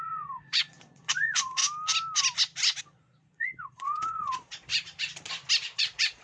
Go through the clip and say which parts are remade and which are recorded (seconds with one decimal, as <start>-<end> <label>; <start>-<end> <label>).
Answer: 0.0-1.6 remade; 1.6-2.8 recorded; 2.8-4.7 remade; 4.7-5.8 recorded; 5.8-6.2 remade